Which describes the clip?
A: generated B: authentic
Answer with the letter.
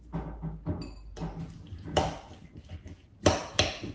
B